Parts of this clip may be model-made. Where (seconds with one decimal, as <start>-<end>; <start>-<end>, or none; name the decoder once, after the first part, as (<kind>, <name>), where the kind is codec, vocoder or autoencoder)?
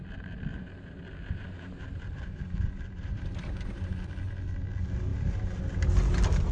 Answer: 0.5-3.9 (vocoder, BigVGAN v2); 5.1-5.6